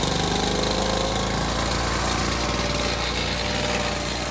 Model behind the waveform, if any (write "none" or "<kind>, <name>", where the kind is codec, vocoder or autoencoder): none